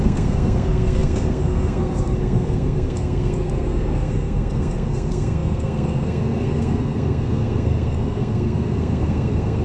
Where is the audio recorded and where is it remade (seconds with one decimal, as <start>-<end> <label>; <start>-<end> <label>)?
0.0-9.6 remade

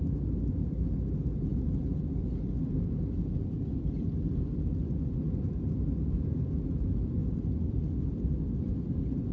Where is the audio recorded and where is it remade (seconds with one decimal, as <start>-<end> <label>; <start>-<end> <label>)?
0.0-7.2 recorded; 7.2-8.8 remade; 8.8-9.3 recorded

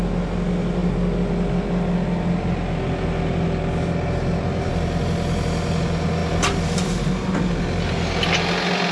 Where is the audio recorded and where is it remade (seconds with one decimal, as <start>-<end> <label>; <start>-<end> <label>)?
0.0-8.9 recorded

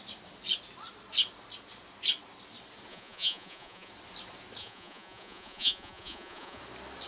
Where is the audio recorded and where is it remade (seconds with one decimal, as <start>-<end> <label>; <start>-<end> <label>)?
0.0-2.9 recorded; 2.9-3.9 remade; 3.9-4.6 recorded; 4.6-6.6 remade; 6.6-7.1 recorded

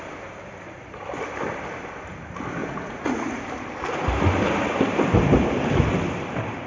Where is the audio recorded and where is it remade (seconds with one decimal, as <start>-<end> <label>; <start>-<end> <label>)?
0.0-2.6 recorded; 2.6-3.5 remade; 3.5-6.7 recorded

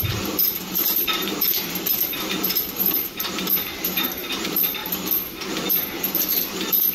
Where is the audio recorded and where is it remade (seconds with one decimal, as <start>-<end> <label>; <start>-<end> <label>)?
0.0-4.8 remade; 4.8-6.5 recorded; 6.5-6.9 remade

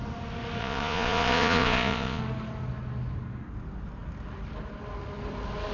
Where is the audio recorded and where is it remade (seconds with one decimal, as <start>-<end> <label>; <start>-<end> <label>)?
0.0-0.6 recorded; 0.6-2.2 remade; 2.2-5.7 recorded

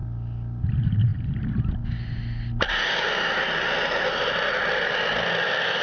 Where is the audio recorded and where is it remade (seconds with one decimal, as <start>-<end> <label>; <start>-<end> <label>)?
0.0-5.8 recorded